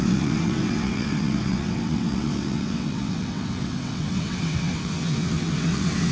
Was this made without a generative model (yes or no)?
no